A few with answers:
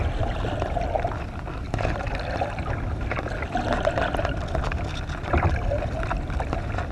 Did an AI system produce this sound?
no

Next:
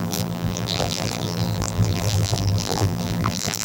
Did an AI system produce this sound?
yes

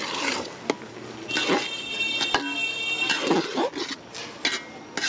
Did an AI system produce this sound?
no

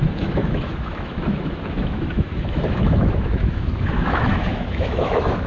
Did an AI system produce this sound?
yes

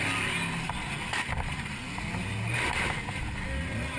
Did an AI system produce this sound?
no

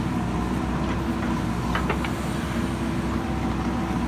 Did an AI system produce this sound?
no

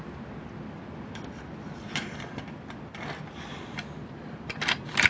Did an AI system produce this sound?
no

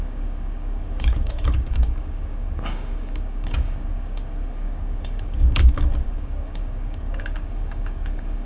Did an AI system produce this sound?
yes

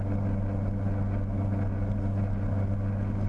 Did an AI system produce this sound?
no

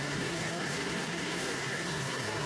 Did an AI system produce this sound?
yes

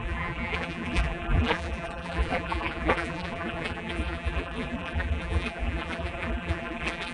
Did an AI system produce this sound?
yes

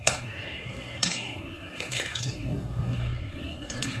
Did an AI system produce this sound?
yes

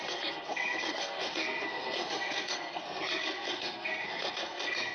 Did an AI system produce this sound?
yes